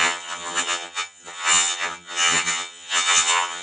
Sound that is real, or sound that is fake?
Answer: fake